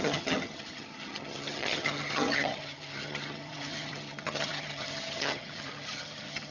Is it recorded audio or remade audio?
remade